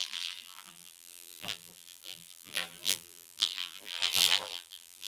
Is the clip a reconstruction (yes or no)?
yes